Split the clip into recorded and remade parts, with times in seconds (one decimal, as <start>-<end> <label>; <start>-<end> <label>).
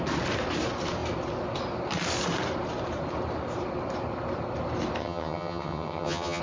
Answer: 0.0-5.0 recorded; 5.0-6.4 remade